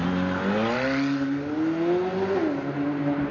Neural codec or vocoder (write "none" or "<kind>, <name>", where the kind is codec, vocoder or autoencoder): none